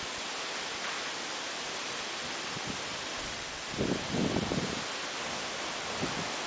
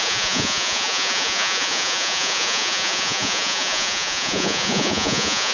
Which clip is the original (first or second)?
first